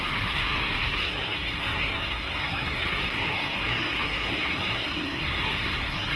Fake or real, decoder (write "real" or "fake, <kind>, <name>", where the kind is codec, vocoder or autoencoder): fake, codec, SNAC